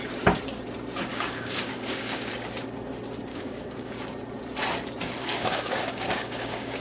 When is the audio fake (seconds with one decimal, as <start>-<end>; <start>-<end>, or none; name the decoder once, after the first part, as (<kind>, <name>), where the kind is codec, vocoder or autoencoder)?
1.1-2.3 (codec, DAC); 3.3-3.9; 5.2-6.8

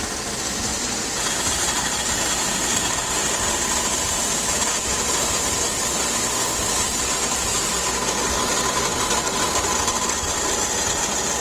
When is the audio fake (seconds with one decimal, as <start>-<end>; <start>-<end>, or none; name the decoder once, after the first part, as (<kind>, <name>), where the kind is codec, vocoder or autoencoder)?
0.7-4.6 (vocoder, BigVGAN v2)

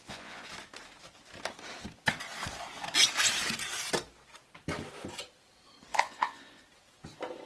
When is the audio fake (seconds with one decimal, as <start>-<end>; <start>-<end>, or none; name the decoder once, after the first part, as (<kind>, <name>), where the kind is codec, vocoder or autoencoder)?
0.0-0.5 (vocoder, Vocos); 5.9-6.6